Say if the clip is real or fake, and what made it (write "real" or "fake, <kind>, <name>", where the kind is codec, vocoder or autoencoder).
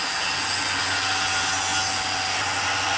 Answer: real